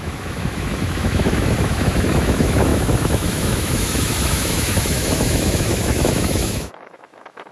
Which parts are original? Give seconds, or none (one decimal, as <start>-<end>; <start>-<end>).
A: none